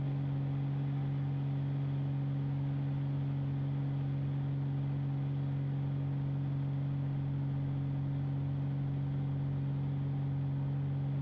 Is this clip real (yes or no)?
yes